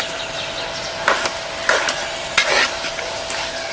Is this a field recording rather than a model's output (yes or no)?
yes